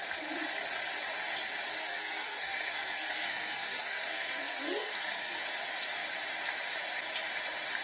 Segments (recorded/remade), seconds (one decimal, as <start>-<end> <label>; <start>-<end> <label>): 0.0-1.8 recorded; 1.8-5.4 remade; 5.4-7.8 recorded